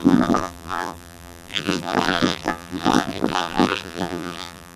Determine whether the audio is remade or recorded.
remade